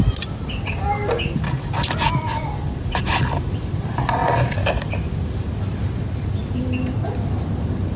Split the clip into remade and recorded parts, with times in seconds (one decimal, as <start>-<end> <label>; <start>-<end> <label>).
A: 0.0-1.0 recorded; 1.0-1.5 remade; 1.5-8.0 recorded